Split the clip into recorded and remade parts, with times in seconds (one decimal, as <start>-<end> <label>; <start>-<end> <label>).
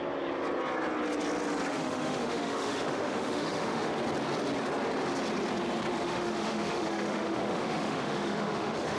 0.0-1.7 recorded; 1.7-3.9 remade; 3.9-5.9 recorded; 5.9-9.0 remade